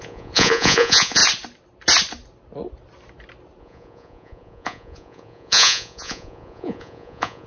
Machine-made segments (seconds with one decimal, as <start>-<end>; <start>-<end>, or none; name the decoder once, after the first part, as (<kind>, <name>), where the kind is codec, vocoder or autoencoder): 0.0-1.2 (vocoder, Vocos); 3.6-7.5